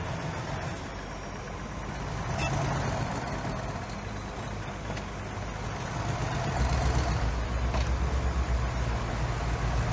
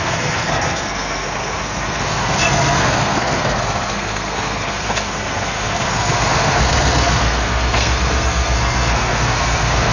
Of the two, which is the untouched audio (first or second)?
first